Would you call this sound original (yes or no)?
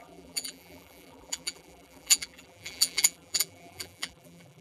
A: no